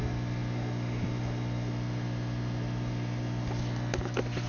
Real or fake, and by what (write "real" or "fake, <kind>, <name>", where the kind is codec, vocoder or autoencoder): real